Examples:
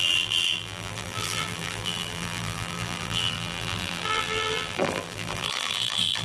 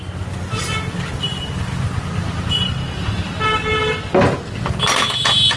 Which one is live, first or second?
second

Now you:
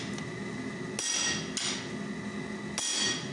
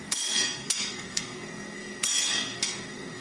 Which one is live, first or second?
first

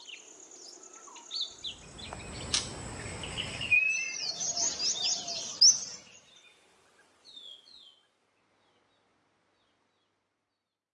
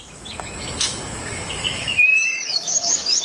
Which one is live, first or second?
first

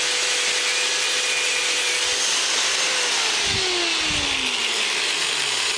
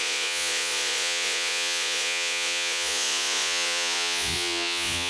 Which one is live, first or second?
first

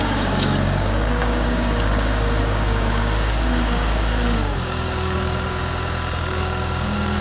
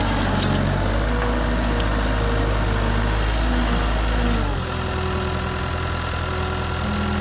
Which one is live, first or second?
second